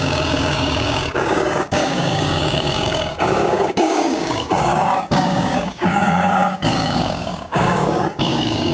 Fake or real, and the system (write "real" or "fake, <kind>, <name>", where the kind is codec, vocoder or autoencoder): fake, codec, DAC